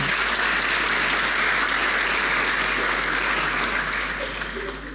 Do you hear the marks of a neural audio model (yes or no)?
no